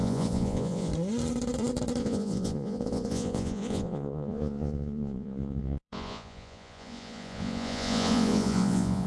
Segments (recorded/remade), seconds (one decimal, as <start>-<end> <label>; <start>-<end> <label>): 0.0-0.9 remade; 0.9-2.0 recorded; 2.0-9.1 remade